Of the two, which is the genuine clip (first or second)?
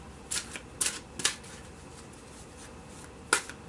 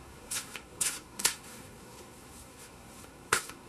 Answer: first